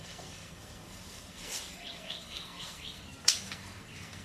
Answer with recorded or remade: remade